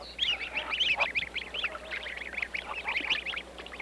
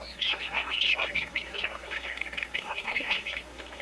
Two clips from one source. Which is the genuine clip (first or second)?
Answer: first